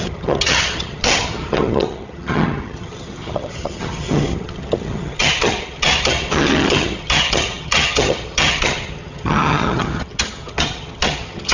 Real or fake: fake